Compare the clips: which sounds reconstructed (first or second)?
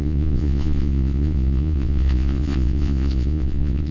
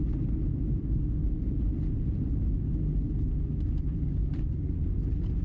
first